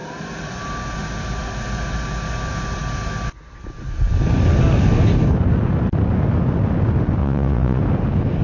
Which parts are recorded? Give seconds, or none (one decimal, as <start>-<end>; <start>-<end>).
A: 0.0-7.2; 7.8-8.4